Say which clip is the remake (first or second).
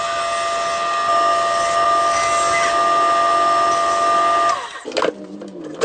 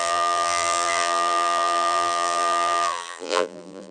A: second